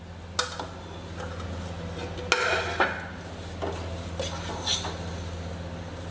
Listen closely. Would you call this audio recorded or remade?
recorded